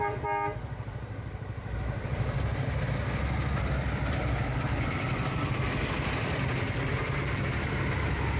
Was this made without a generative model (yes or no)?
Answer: yes